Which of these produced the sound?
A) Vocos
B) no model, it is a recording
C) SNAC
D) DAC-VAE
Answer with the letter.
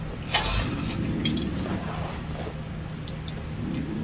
B